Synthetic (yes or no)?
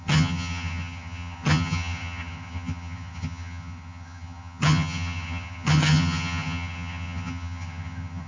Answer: yes